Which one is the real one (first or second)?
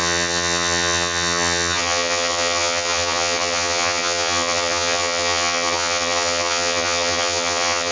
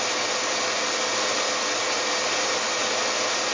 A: second